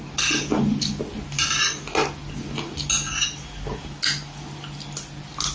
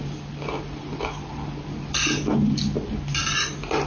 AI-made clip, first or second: second